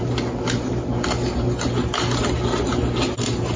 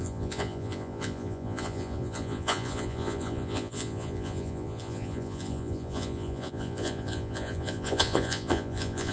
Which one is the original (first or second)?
first